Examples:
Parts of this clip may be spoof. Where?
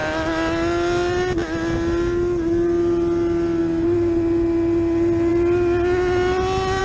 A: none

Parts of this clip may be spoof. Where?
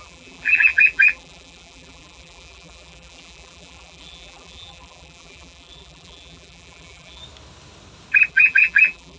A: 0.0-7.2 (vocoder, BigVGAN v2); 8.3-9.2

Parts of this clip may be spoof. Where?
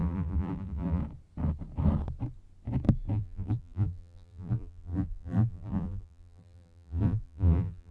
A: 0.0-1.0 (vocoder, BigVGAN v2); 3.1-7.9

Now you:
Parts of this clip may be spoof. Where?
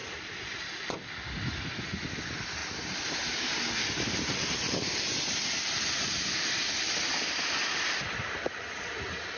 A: 0.0-0.8 (vocoder, BigVGAN v2); 2.6-6.9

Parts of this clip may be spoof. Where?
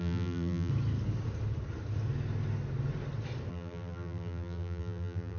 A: 0.0-0.7 (vocoder, BigVGAN v2); 3.5-5.4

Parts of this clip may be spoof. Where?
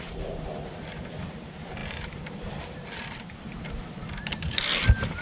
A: 0.0-5.2 (vocoder, BigVGAN v2)